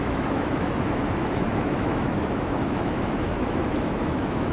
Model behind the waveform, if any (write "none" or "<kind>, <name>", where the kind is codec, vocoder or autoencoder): autoencoder, DAC-VAE